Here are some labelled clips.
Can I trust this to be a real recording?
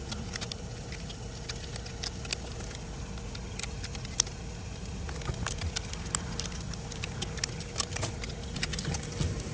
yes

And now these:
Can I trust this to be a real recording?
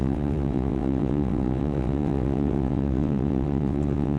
no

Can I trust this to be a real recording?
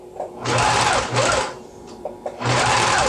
no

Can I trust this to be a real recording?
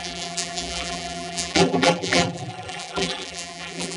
no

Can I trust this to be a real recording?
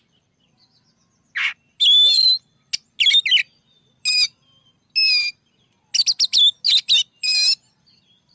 yes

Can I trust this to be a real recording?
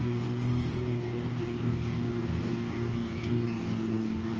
no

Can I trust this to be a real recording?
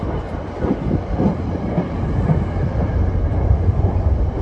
no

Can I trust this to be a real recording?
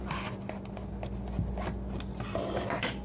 yes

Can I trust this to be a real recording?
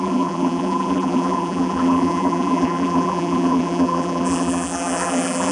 no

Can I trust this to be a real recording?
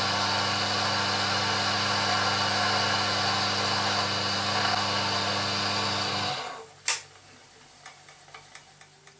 yes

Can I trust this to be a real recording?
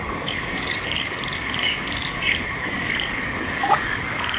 no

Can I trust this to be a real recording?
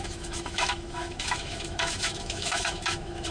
no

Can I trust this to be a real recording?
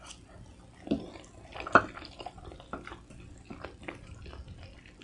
yes